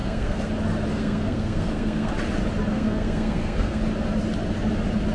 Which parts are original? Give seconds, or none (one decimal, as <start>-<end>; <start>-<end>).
0.5-0.9; 2.1-2.7; 3.8-5.1